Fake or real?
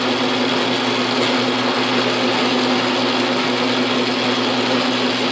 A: real